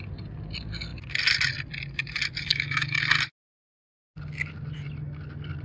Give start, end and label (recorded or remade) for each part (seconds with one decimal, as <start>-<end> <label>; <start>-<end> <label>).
0.0-2.5 recorded; 2.5-3.0 remade; 3.0-5.6 recorded